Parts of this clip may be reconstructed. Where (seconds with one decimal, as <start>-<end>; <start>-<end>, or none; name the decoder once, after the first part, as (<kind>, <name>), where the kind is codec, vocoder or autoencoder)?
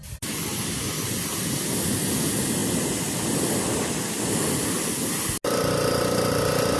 none